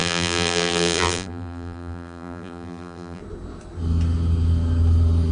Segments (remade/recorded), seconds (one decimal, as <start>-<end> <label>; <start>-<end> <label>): 0.0-3.2 remade; 3.2-5.3 recorded